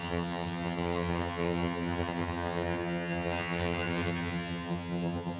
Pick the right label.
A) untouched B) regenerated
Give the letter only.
B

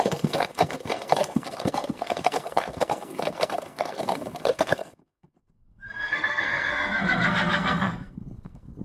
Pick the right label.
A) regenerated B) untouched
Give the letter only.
A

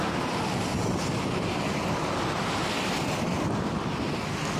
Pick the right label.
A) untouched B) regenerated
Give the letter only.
A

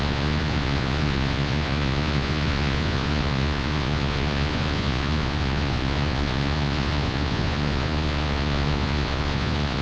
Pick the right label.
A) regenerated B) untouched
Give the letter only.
A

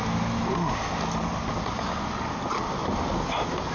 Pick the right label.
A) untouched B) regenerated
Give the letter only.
A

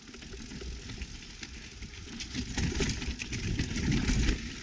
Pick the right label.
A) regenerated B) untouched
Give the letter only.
B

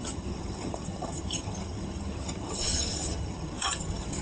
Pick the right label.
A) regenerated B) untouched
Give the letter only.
A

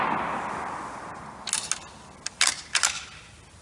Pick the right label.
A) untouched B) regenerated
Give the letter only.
A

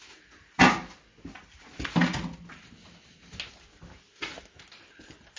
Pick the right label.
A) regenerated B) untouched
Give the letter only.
B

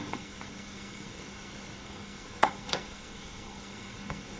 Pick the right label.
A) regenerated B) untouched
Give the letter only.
A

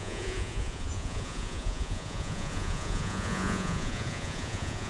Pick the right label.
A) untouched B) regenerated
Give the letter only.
B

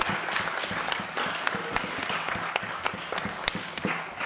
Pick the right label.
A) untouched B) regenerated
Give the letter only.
B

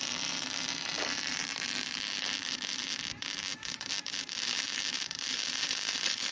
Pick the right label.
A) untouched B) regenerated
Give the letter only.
B